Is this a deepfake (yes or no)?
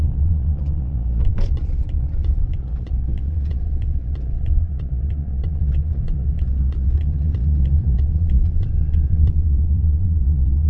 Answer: yes